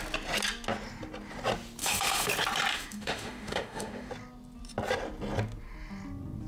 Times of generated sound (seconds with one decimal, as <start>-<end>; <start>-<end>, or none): 1.8-2.3; 2.7-4.1